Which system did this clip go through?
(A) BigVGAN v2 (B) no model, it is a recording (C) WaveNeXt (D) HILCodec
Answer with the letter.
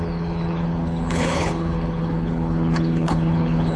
D